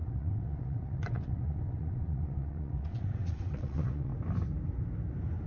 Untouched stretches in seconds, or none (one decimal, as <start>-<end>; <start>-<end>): 4.1-5.5